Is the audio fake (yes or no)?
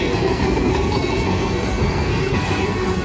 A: yes